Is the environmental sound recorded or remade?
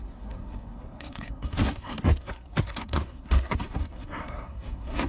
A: remade